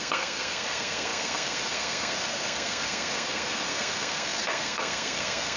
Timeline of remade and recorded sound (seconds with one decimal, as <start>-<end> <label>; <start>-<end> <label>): 0.0-5.6 remade